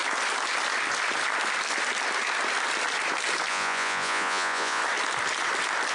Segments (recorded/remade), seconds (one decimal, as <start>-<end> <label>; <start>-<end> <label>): 0.0-3.5 recorded; 3.5-4.8 remade; 4.8-5.9 recorded